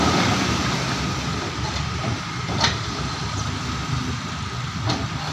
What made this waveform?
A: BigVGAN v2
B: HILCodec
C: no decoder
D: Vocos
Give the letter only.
A